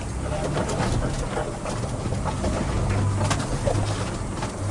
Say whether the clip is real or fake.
real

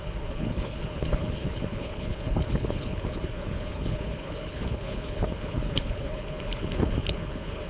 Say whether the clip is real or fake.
fake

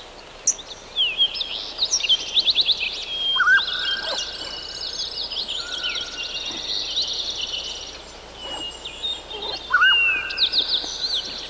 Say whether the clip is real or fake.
real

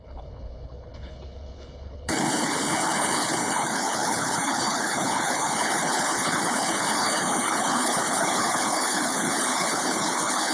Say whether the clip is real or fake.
fake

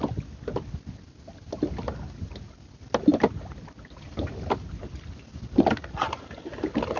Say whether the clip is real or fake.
real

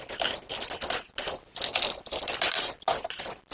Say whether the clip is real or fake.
real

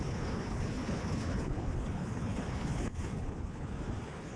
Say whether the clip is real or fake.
fake